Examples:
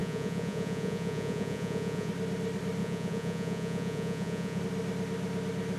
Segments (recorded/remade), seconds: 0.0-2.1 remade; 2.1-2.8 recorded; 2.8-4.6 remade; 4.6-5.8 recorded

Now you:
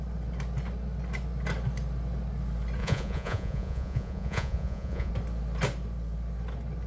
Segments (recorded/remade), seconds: 0.0-2.8 recorded; 2.8-5.1 remade; 5.1-6.9 recorded

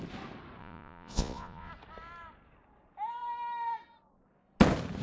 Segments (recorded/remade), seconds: 0.0-0.6 recorded; 0.6-1.7 remade; 1.7-5.0 recorded

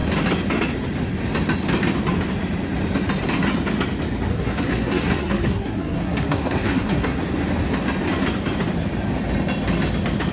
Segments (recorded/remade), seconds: 0.0-4.3 recorded; 4.3-7.2 remade; 7.2-10.3 recorded

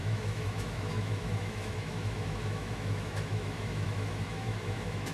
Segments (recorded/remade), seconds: 0.0-5.1 remade

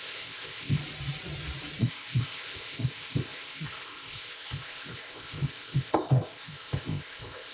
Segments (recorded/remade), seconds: 0.0-0.8 remade; 0.8-1.8 recorded; 1.8-7.5 remade

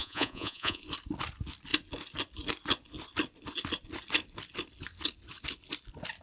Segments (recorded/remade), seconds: 0.0-0.8 remade; 0.8-6.2 recorded